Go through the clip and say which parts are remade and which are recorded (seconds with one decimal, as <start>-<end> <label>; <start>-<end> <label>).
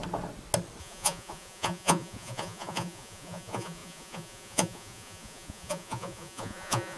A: 0.0-0.8 recorded; 0.8-7.0 remade